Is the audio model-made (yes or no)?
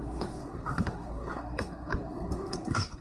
yes